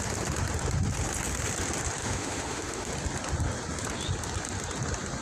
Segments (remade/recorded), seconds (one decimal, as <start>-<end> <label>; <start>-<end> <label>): 0.0-2.0 recorded; 2.0-2.9 remade; 2.9-5.2 recorded